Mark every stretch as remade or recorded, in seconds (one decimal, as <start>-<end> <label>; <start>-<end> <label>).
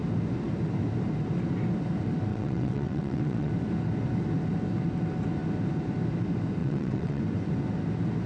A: 0.0-2.3 recorded; 2.3-3.5 remade; 3.5-6.6 recorded; 6.6-7.2 remade; 7.2-8.3 recorded